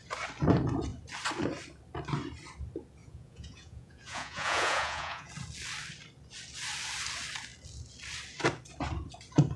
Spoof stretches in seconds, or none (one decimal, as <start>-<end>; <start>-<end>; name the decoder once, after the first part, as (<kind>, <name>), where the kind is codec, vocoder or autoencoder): 3.0-5.3 (vocoder, Vocos)